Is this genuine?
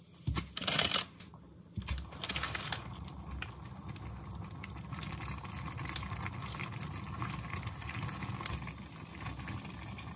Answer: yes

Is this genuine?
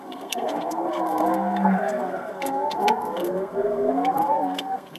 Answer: no